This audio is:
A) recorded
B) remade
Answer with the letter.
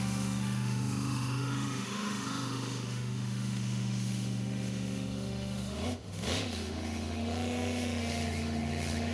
B